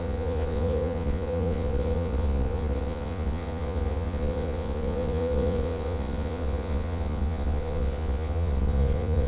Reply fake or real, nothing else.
fake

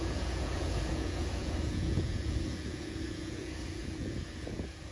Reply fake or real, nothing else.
fake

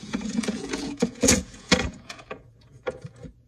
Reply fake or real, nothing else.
fake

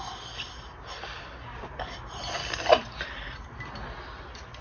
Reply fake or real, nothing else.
real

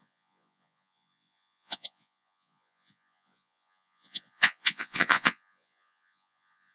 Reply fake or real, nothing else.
fake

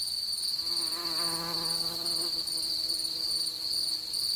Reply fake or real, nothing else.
real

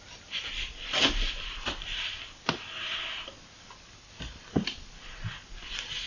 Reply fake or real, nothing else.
real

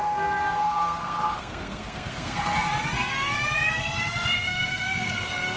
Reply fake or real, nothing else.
fake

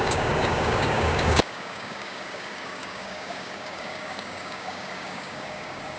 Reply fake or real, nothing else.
fake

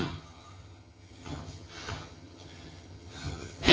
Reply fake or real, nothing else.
fake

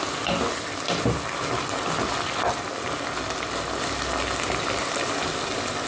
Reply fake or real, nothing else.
real